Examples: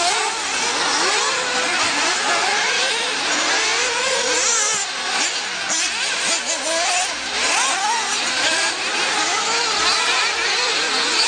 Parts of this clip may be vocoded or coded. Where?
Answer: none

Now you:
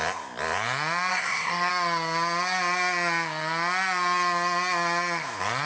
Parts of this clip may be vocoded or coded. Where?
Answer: 1.1-1.7 (codec, SNAC)

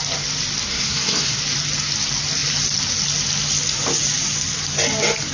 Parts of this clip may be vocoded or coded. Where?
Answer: 0.7-1.4 (codec, SNAC)

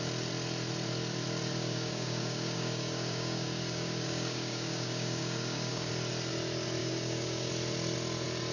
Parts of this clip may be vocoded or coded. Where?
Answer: 1.5-5.9 (codec, DAC); 6.8-7.5

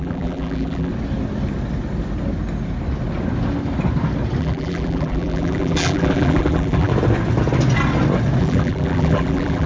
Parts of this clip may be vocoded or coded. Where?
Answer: 0.0-0.9 (vocoder, BigVGAN v2); 4.4-6.9; 8.4-9.7

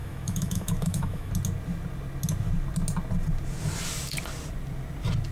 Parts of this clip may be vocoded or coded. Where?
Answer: 0.0-1.3 (autoencoder, DAC-VAE)